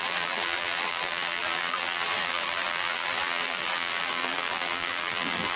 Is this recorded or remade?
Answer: remade